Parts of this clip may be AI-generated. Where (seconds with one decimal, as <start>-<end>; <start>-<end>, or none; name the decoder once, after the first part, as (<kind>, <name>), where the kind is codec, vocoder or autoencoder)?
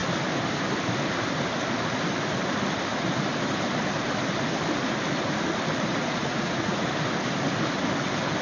5.9-6.9 (vocoder, Vocos)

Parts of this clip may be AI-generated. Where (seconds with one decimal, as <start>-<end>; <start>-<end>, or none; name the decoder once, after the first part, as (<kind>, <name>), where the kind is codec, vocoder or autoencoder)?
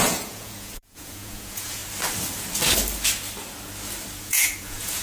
0.0-1.8 (vocoder, Vocos); 4.2-5.0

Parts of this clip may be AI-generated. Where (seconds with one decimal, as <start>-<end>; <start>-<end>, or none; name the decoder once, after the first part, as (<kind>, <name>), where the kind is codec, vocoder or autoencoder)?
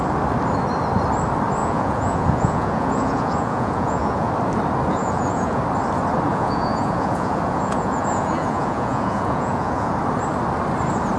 1.6-4.3 (vocoder, Vocos); 4.9-5.6; 6.3-9.9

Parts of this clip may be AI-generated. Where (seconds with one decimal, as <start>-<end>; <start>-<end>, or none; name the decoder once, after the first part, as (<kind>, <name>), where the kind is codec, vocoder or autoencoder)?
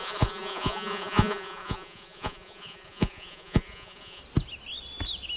0.0-4.2 (vocoder, Vocos)